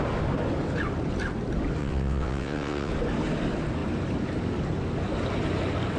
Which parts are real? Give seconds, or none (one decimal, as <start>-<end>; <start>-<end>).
0.0-1.8; 2.9-6.0